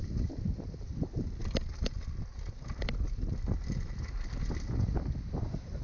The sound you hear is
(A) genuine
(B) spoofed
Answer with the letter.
A